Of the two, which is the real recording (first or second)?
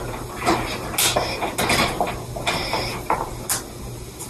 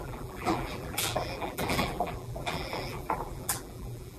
first